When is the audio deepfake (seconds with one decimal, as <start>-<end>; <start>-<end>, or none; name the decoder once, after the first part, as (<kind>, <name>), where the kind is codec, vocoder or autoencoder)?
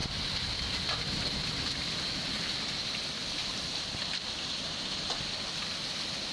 none